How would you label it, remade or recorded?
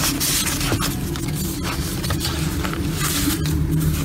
recorded